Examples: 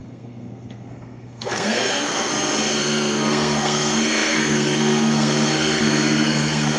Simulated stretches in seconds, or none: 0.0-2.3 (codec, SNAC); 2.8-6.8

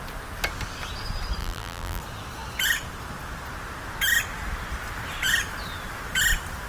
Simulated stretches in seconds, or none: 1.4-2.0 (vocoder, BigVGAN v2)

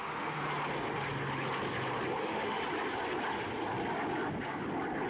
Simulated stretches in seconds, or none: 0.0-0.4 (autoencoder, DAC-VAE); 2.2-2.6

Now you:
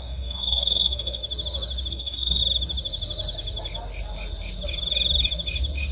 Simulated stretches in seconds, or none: 0.0-1.2 (codec, DAC); 1.9-2.4